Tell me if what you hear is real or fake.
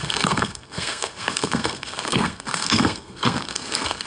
fake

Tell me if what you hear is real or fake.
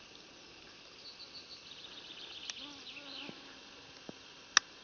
real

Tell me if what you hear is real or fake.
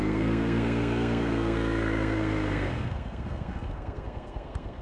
fake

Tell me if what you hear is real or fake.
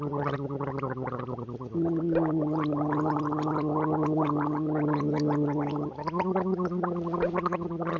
real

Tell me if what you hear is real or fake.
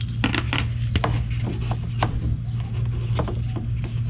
real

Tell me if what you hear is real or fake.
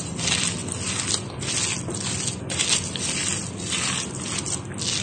real